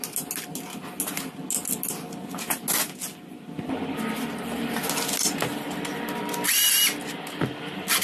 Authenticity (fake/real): real